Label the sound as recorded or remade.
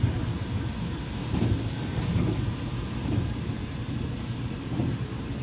remade